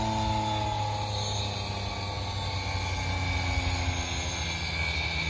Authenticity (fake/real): real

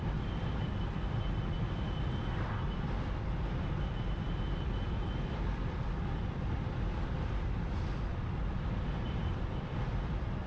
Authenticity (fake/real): fake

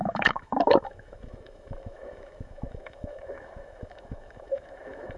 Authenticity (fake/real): fake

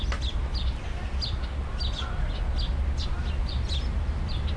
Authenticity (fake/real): real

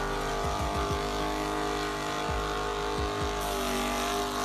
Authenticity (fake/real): real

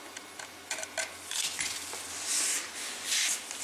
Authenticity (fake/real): real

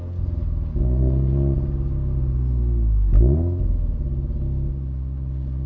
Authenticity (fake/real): real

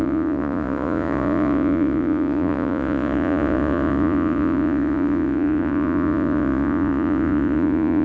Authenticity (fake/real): fake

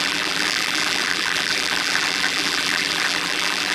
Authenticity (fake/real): fake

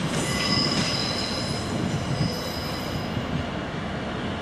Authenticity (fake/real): real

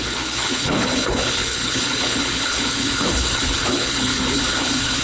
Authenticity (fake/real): fake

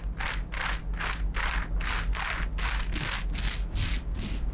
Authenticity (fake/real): real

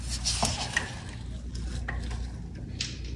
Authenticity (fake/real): real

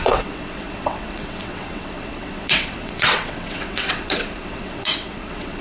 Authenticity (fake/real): fake